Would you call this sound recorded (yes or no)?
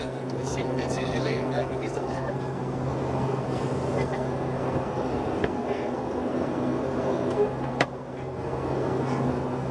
no